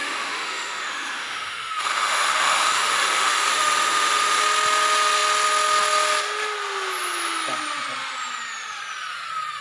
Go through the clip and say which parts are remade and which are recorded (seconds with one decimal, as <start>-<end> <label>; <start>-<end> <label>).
0.0-4.4 remade; 4.4-9.6 recorded